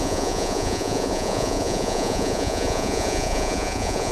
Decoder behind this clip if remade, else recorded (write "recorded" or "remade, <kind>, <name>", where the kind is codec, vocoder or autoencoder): remade, vocoder, Vocos